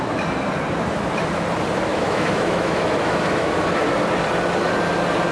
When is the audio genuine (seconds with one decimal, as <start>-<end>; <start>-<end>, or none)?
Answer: 0.0-1.9; 3.5-5.3